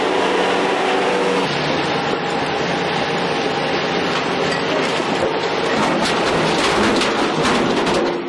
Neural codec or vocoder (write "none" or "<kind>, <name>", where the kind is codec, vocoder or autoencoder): none